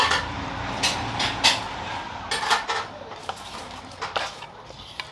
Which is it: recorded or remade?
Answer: recorded